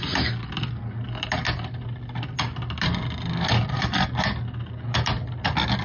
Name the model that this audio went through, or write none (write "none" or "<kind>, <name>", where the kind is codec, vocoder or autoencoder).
none